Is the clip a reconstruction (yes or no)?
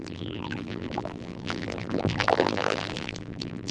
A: yes